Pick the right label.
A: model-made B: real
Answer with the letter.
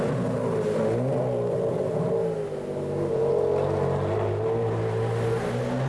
B